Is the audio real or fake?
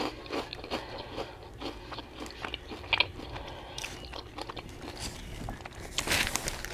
real